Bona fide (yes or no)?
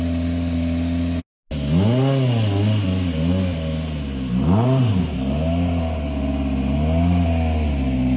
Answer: yes